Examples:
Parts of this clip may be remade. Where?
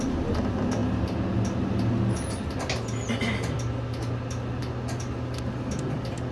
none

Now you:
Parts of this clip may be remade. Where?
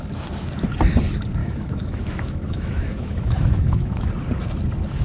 1.4-4.1 (autoencoder, DAC-VAE)